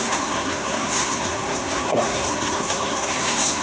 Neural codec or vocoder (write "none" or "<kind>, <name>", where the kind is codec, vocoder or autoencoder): codec, SNAC